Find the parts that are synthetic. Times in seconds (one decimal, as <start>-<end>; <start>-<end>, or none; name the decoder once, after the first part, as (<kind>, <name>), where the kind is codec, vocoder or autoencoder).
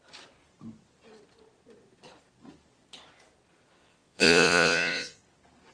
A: 3.8-5.2 (vocoder, Vocos)